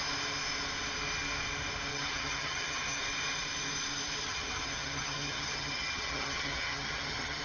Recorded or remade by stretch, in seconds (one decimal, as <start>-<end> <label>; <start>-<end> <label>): 0.0-1.9 recorded; 1.9-3.0 remade; 3.0-4.2 recorded; 4.2-7.4 remade